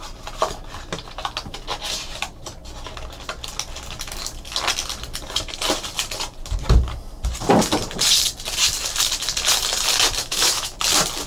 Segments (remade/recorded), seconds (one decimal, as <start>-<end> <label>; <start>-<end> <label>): 0.0-10.2 recorded; 10.2-10.8 remade; 10.8-11.3 recorded